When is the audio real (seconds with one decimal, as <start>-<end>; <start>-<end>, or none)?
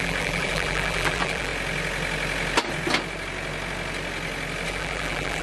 1.5-4.7